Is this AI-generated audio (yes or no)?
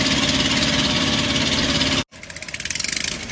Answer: no